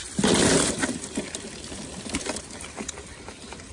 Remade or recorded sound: recorded